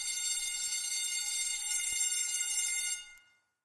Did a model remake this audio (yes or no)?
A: no